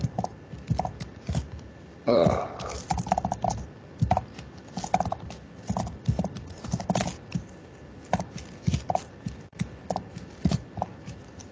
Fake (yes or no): no